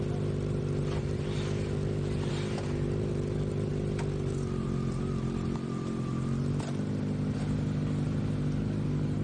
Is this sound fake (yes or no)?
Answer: no